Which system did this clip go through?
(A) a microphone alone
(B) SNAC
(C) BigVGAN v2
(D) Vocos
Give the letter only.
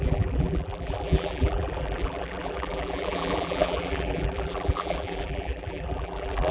C